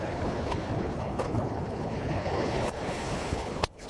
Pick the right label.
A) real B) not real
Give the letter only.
B